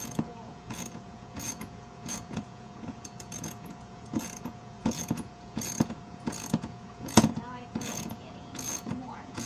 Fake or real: fake